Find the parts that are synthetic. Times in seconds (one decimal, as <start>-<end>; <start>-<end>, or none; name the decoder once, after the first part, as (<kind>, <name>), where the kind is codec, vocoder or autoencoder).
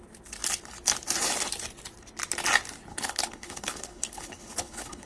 2.9-5.1 (codec, HILCodec)